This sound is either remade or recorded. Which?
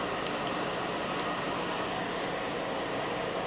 recorded